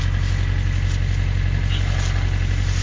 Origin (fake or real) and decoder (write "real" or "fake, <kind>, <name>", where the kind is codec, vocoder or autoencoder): real